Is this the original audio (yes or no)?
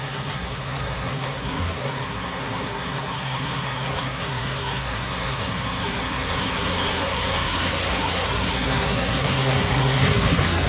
no